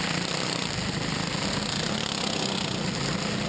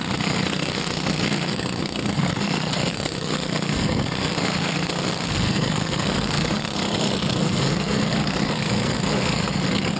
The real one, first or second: first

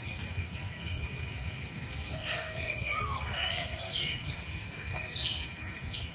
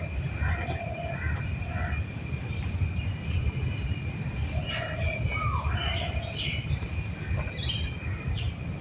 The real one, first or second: second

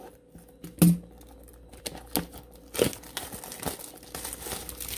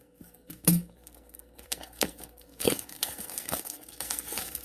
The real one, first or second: first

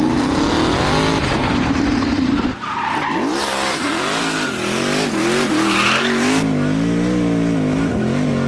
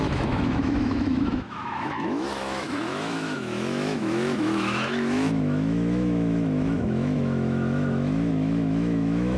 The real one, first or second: first